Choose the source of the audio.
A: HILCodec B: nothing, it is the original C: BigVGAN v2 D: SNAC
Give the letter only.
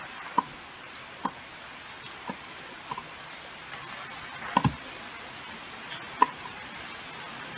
B